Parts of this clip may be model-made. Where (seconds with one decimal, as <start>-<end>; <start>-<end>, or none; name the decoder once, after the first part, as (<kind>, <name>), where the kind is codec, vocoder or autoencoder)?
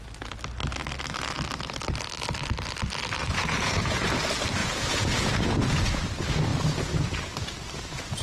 3.2-4.1 (vocoder, Vocos); 4.6-6.0